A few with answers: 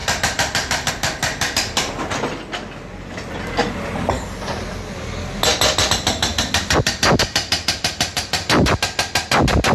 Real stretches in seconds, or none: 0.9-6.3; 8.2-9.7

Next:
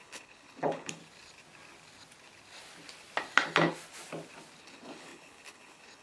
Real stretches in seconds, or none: 1.0-4.6